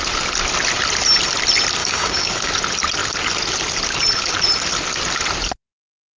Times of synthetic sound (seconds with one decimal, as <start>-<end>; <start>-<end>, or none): 1.8-2.5

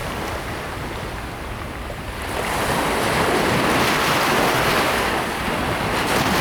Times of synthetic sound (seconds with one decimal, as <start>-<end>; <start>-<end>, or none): 4.7-5.4

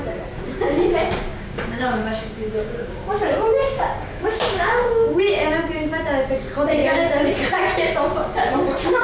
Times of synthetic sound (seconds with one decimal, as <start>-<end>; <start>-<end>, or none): 1.3-3.2; 3.6-5.2

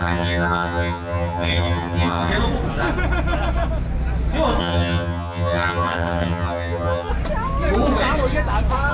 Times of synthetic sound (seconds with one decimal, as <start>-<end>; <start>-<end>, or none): 0.0-2.3; 4.6-7.1

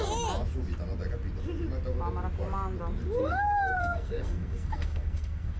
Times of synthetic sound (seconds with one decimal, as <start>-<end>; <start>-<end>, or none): 3.2-5.6

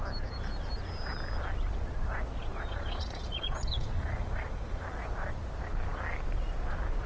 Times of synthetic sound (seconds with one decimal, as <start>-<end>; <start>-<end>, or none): 2.5-4.8

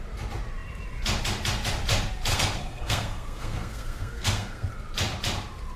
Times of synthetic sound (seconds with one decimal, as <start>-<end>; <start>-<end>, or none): 2.3-4.7